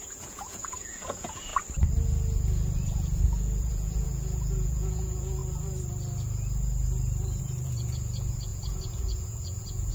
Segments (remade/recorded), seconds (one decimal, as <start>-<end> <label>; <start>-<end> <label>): 0.0-1.5 remade; 1.5-3.6 recorded; 3.6-5.4 remade; 5.4-7.4 recorded; 7.4-9.9 remade